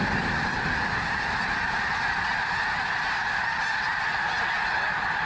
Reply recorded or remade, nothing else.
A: recorded